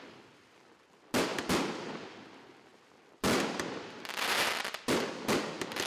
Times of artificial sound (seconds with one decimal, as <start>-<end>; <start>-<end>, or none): none